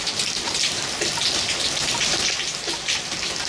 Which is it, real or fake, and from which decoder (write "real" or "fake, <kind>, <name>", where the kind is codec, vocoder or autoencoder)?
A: real